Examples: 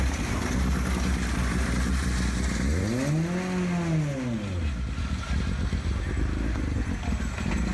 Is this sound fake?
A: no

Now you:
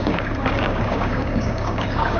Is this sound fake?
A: yes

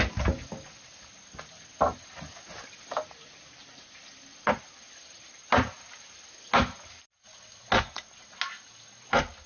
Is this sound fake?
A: no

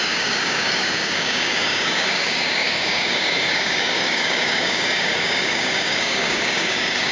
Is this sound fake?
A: yes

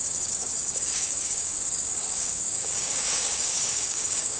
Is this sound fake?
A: yes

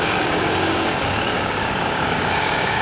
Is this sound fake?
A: yes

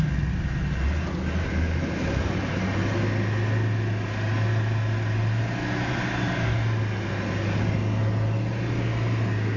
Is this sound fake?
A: no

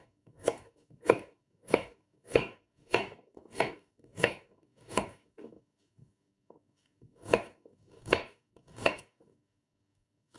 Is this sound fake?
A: yes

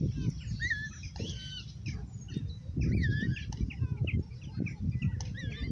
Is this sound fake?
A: no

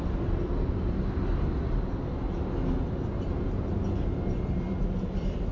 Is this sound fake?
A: no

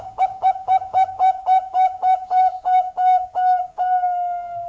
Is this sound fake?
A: yes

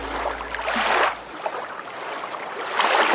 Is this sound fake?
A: no